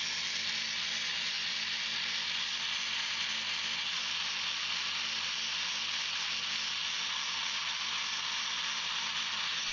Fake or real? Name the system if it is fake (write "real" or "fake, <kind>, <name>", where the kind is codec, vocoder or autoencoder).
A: real